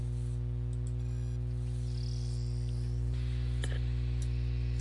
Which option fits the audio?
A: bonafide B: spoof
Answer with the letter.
A